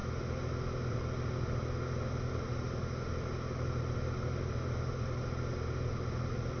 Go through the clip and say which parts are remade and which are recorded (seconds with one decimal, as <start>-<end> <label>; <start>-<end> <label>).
0.0-6.6 recorded